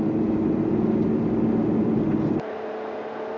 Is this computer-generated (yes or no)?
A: no